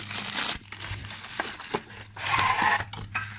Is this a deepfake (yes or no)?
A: no